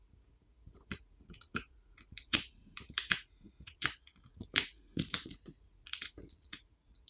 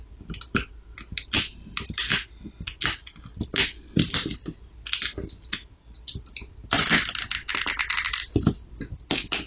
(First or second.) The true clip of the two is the second